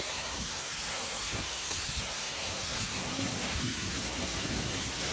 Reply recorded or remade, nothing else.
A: remade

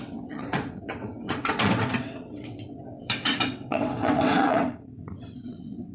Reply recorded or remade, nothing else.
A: remade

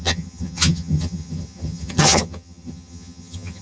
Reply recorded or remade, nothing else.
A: remade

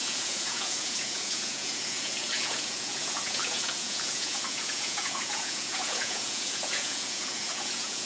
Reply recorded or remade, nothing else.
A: remade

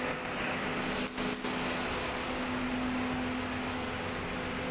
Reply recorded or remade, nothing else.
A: recorded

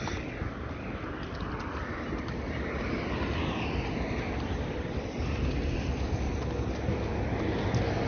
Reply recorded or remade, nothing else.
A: recorded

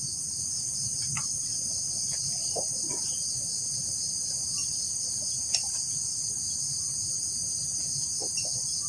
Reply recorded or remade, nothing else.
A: remade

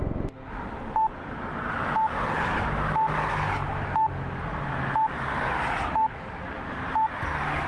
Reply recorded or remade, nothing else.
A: recorded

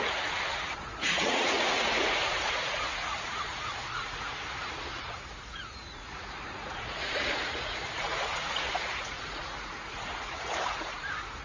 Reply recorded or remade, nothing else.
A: remade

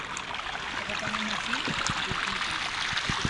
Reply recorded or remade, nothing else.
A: recorded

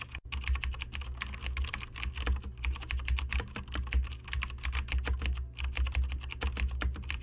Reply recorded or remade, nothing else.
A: recorded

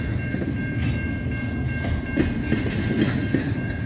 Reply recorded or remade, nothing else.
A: recorded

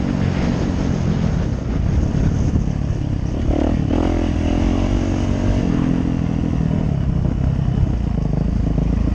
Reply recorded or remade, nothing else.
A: recorded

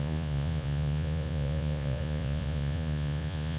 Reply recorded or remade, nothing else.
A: remade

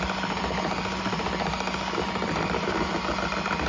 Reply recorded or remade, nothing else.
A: recorded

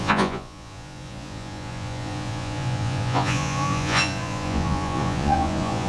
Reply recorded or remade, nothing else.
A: remade